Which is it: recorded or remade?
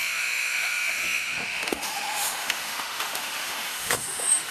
remade